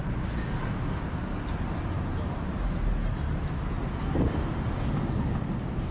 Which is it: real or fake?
real